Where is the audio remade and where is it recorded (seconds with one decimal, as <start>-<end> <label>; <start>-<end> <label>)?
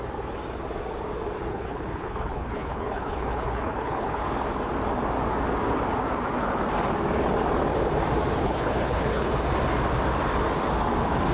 0.0-1.5 recorded; 1.5-4.2 remade; 4.2-8.4 recorded; 8.4-9.3 remade; 9.3-11.3 recorded